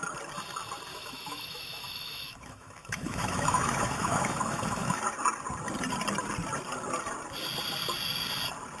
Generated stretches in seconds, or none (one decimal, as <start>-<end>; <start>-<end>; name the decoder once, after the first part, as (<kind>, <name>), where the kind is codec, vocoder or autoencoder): 0.9-5.0 (autoencoder, DAC-VAE)